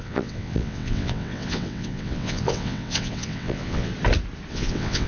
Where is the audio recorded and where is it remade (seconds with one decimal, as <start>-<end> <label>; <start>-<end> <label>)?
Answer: 0.0-3.9 remade; 3.9-4.5 recorded; 4.5-5.1 remade